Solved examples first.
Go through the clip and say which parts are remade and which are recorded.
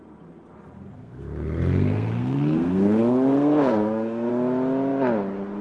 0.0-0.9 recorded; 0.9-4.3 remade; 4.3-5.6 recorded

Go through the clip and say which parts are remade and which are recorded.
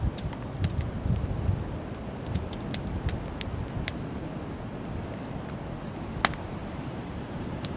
0.0-6.6 recorded; 6.6-7.8 remade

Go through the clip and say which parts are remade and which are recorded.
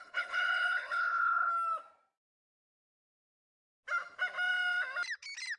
0.0-1.5 remade; 1.5-2.3 recorded; 2.3-3.0 remade; 3.0-5.6 recorded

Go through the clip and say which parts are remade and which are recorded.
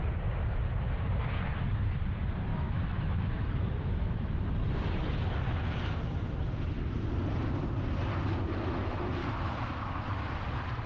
0.0-2.5 recorded; 2.5-4.5 remade; 4.5-9.2 recorded; 9.2-10.1 remade; 10.1-10.9 recorded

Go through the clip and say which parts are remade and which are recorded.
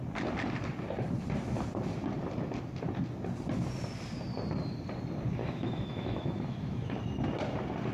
0.0-5.4 recorded; 5.4-7.0 remade; 7.0-7.9 recorded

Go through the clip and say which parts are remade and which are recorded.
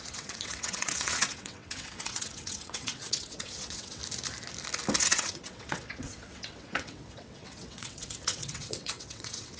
0.0-4.0 remade; 4.0-5.0 recorded; 5.0-9.6 remade